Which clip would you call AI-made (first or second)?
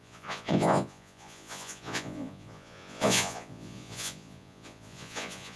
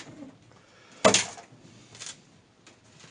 first